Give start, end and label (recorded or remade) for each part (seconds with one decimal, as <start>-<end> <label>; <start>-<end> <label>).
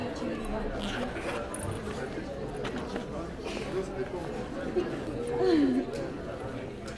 0.0-7.0 recorded